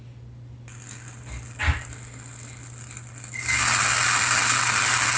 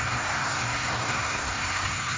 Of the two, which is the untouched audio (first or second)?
first